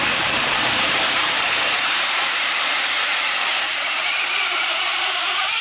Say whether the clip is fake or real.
fake